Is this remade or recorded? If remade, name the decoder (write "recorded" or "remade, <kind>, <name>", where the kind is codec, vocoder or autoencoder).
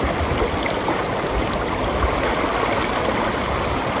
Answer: recorded